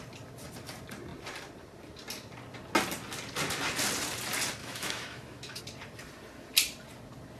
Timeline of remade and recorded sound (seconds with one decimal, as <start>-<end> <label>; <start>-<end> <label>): 0.0-4.6 recorded; 4.6-5.6 remade; 5.6-7.4 recorded